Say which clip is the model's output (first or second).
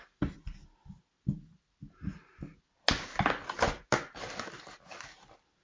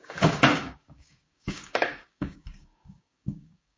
second